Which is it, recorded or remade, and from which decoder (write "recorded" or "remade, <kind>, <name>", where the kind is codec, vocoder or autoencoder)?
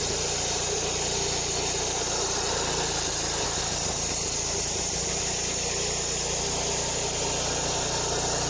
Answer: recorded